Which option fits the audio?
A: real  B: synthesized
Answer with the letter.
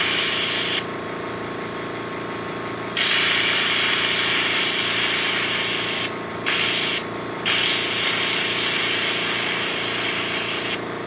A